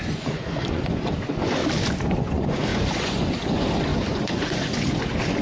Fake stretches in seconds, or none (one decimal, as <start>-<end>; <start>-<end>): 0.0-1.6; 2.2-5.4